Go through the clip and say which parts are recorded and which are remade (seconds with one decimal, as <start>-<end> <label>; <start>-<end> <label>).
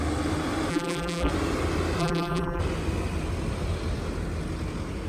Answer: 0.0-0.7 recorded; 0.7-1.3 remade; 1.3-2.0 recorded; 2.0-2.6 remade; 2.6-5.1 recorded